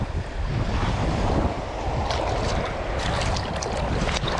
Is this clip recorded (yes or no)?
yes